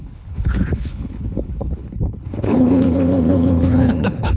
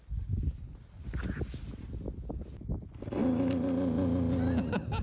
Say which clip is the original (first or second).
second